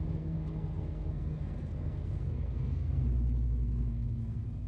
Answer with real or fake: fake